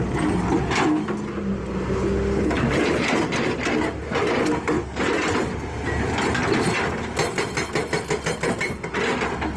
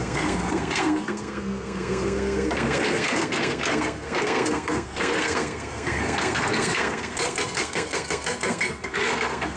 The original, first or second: first